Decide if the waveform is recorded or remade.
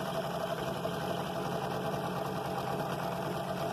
recorded